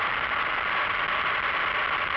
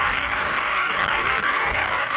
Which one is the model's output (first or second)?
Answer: second